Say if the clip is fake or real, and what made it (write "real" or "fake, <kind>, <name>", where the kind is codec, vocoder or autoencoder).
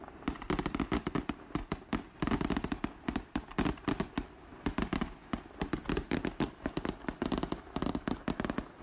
real